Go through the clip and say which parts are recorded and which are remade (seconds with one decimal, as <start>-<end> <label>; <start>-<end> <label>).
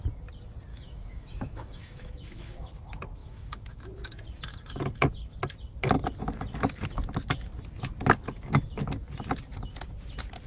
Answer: 0.0-0.7 recorded; 0.7-2.7 remade; 2.7-3.2 recorded; 3.2-3.8 remade; 3.8-10.5 recorded